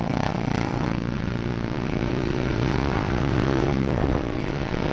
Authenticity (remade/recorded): remade